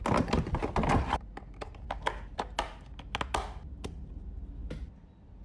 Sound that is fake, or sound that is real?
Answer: real